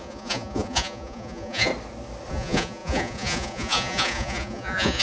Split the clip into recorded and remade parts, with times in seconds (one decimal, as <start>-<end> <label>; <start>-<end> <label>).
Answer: 0.0-1.7 remade; 1.7-2.3 recorded; 2.3-5.0 remade